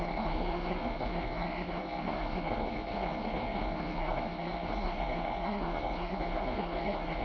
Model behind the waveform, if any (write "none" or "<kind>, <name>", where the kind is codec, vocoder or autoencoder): codec, SNAC